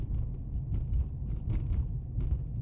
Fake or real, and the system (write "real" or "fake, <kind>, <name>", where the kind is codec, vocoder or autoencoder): real